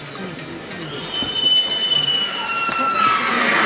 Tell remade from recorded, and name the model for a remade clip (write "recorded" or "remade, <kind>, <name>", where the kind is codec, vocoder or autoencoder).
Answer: recorded